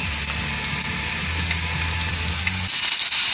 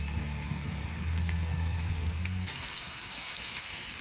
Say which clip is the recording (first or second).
first